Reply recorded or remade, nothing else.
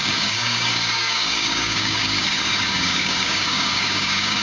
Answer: remade